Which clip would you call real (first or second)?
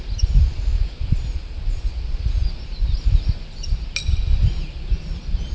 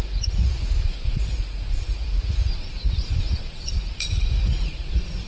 first